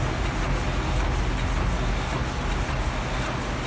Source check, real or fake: real